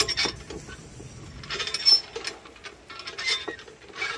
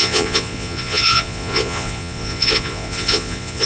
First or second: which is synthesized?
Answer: second